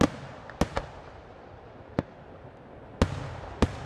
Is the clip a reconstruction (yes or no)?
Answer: no